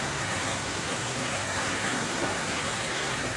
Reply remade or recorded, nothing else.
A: remade